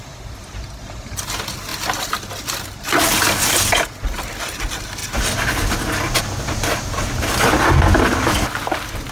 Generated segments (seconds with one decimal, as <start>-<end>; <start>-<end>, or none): none